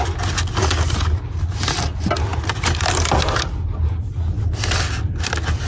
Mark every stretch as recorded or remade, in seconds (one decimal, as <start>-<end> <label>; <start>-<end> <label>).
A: 0.0-5.7 recorded